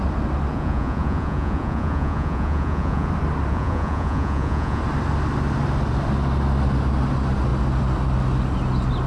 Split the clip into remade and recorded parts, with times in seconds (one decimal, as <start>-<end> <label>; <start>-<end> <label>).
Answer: 0.0-0.5 recorded; 0.5-3.1 remade; 3.1-3.5 recorded; 3.5-4.8 remade; 4.8-9.1 recorded